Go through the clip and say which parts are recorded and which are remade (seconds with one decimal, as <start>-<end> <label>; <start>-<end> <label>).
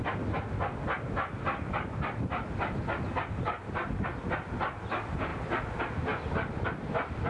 0.0-7.3 recorded